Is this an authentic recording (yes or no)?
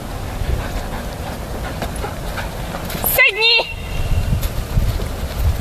yes